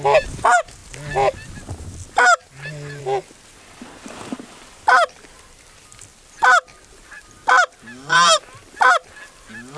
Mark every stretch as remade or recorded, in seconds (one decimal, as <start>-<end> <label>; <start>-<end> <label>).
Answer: 0.0-9.8 recorded

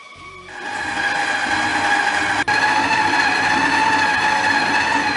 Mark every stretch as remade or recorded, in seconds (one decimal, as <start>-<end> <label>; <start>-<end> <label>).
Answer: 0.0-1.7 recorded; 1.7-3.9 remade; 3.9-5.2 recorded